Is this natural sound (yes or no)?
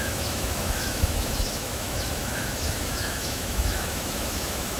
no